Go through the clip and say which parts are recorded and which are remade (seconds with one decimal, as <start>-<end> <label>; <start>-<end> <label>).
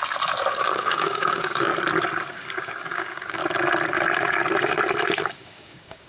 0.0-0.6 recorded; 0.6-1.7 remade; 1.7-2.3 recorded; 2.3-3.4 remade; 3.4-5.2 recorded; 5.2-6.1 remade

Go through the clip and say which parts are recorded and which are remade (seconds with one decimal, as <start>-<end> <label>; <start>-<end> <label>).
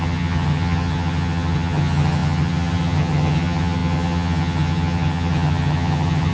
0.0-6.3 remade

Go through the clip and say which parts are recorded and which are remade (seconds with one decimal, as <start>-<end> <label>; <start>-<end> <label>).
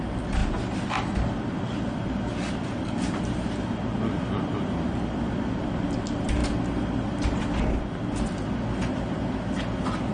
0.0-10.1 recorded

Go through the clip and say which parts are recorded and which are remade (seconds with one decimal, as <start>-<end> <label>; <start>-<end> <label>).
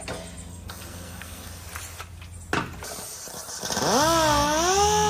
0.0-0.5 recorded; 0.5-1.6 remade; 1.6-5.1 recorded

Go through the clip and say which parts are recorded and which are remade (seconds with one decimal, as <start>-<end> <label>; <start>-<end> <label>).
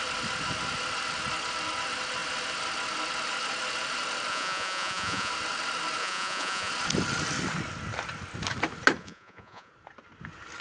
0.0-4.3 recorded; 4.3-5.3 remade; 5.3-6.0 recorded; 6.0-6.7 remade; 6.7-9.0 recorded; 9.0-9.7 remade; 9.7-10.6 recorded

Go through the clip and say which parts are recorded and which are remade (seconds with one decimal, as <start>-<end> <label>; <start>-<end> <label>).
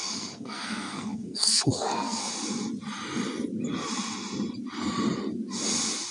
0.0-2.2 remade; 2.2-6.1 recorded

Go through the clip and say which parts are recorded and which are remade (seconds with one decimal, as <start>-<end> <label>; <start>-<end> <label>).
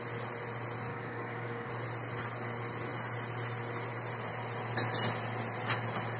0.0-0.9 recorded; 0.9-1.7 remade; 1.7-6.2 recorded